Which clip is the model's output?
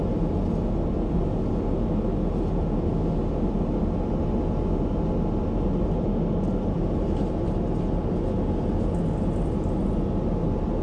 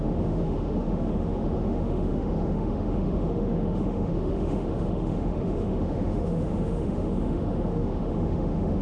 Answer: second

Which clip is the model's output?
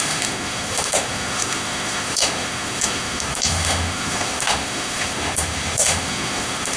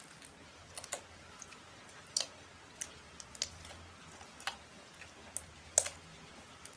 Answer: first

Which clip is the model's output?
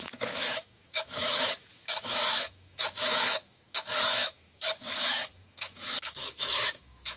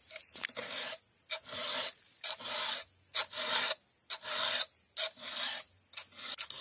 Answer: first